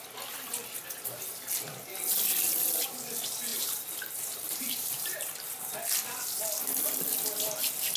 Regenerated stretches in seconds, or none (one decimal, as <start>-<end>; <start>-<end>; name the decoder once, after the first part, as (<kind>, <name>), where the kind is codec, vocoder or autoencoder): 3.5-5.7 (vocoder, BigVGAN v2)